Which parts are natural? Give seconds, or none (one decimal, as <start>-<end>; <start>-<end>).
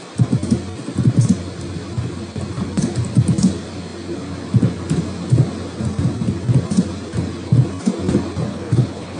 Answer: 0.0-8.5